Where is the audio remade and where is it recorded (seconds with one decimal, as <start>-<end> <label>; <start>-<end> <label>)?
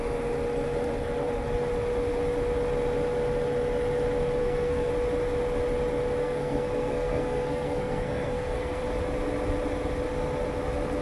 0.0-4.4 recorded; 4.4-4.9 remade; 4.9-6.2 recorded; 6.2-8.8 remade; 8.8-11.0 recorded